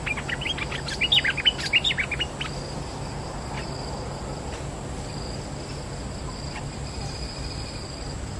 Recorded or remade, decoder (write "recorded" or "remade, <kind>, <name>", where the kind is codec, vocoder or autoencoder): recorded